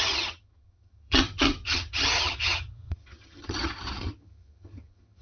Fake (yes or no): yes